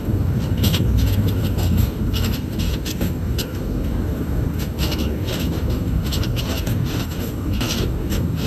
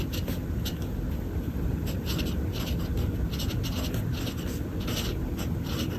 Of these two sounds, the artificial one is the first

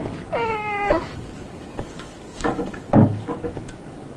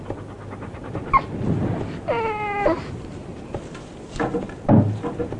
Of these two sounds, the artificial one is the first